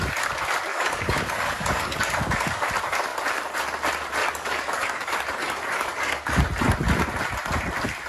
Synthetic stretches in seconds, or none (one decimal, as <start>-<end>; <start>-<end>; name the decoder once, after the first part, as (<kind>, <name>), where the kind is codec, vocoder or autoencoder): 0.7-2.7 (codec, DAC); 4.2-6.4